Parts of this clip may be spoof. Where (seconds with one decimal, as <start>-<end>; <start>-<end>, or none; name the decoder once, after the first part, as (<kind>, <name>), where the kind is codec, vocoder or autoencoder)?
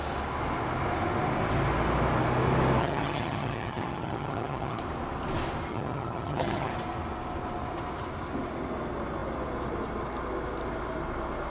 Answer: 2.8-4.8 (vocoder, HiFi-GAN); 5.7-6.7